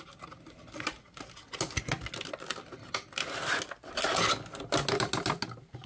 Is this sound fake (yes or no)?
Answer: no